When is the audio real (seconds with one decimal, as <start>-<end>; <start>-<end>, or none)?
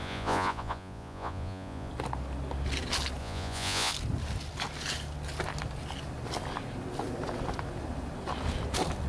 1.9-3.2; 3.9-9.1